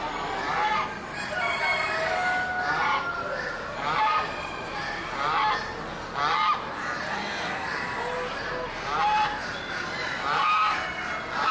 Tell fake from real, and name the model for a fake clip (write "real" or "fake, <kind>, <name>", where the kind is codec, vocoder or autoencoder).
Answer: real